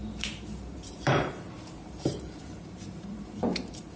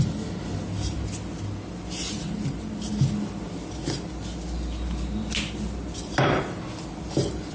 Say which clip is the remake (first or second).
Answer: first